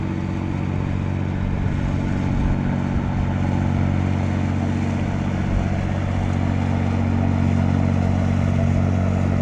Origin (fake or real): real